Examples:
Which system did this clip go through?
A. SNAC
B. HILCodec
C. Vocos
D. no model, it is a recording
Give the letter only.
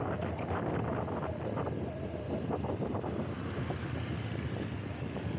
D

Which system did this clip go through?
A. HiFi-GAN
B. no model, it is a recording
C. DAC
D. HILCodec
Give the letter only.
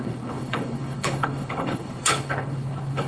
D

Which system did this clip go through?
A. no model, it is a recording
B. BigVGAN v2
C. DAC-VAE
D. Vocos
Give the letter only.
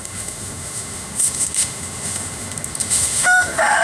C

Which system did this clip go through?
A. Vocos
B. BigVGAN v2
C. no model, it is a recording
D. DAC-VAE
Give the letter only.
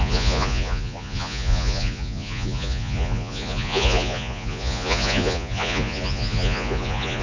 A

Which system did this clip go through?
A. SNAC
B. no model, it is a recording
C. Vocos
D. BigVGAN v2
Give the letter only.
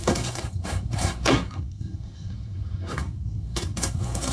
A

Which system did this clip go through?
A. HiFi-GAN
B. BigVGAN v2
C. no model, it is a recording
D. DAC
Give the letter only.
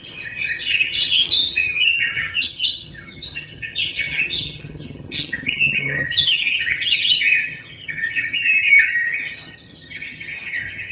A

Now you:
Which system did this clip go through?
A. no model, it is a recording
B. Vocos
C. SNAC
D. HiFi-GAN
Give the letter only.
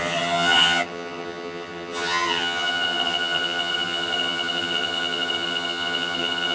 D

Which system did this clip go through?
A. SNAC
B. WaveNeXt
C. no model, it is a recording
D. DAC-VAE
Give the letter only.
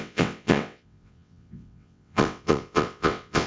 B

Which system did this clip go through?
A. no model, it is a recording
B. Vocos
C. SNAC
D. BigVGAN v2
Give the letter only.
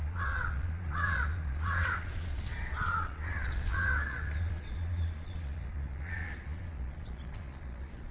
B